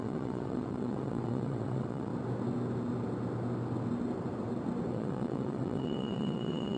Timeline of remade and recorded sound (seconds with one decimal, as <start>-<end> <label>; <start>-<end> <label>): 0.0-2.1 remade; 2.1-4.9 recorded; 4.9-6.8 remade